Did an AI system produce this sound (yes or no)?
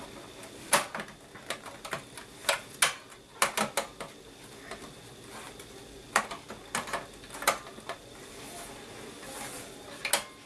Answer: no